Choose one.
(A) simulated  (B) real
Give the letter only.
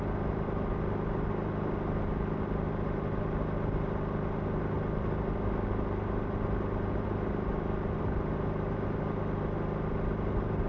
B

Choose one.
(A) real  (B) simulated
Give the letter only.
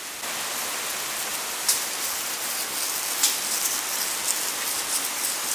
A